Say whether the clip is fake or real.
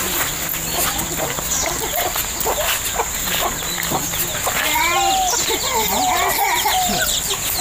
real